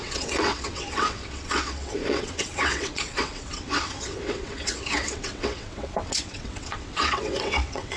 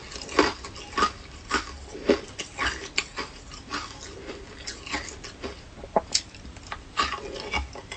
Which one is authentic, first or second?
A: second